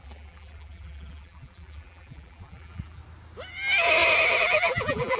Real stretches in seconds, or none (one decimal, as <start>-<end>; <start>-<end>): 3.0-4.4

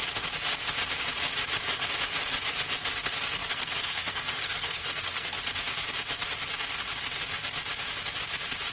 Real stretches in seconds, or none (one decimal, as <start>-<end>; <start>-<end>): 0.0-3.4; 5.4-8.7